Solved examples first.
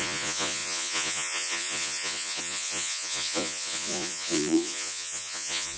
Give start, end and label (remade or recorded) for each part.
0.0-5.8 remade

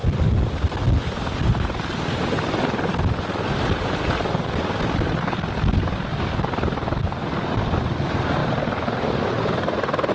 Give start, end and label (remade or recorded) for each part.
0.0-10.1 recorded

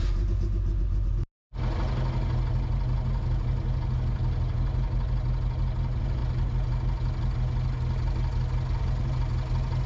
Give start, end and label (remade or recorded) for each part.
0.0-9.9 recorded

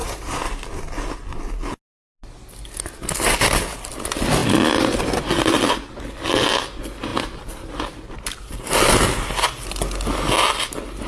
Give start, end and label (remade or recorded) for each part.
0.0-7.1 recorded; 7.1-8.5 remade; 8.5-11.1 recorded

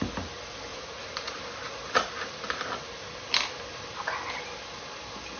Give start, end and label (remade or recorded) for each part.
0.0-0.7 recorded; 0.7-1.3 remade; 1.3-5.4 recorded